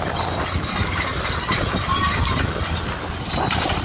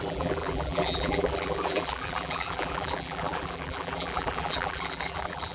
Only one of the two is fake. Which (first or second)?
second